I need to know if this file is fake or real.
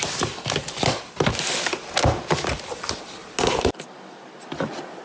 real